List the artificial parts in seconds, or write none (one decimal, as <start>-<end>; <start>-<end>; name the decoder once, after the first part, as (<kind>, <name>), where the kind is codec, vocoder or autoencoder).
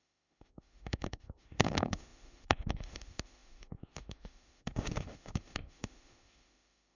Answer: 0.0-7.0 (autoencoder, DAC-VAE)